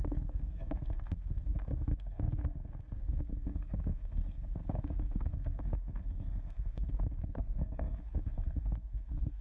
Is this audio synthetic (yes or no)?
yes